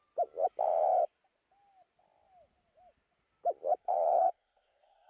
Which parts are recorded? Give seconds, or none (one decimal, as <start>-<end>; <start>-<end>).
0.0-3.8